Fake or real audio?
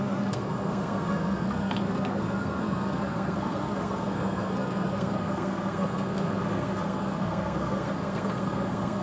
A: fake